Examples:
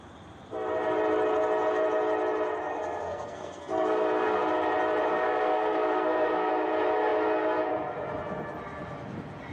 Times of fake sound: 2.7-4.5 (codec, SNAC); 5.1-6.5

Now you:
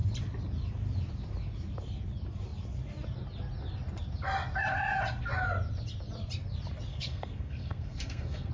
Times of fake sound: 6.9-8.5 (codec, SNAC)

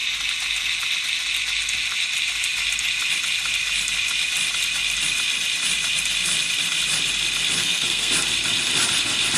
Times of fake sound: 7.6-8.1 (codec, SNAC)

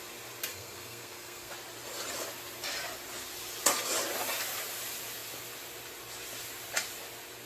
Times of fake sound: 0.5-1.5 (codec, SNAC)

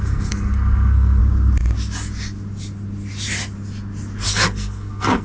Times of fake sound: 0.0-1.2 (codec, SNAC); 4.3-5.2

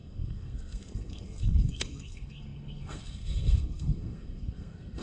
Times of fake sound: 0.0-5.0 (codec, SNAC)

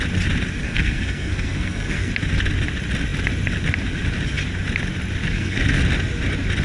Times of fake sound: 0.6-2.1 (codec, SNAC); 5.2-5.8

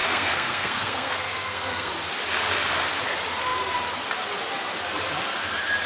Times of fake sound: 0.0-1.9 (codec, SNAC)